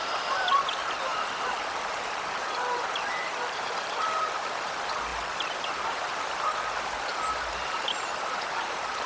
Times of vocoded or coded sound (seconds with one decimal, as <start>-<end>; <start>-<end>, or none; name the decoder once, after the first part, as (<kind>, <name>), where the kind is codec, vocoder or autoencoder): 0.0-9.1 (vocoder, BigVGAN v2)